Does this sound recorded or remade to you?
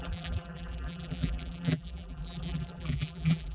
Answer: remade